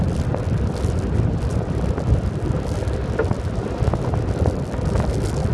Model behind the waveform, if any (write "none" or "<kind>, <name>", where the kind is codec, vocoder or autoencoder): none